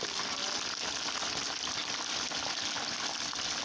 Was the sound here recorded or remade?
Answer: recorded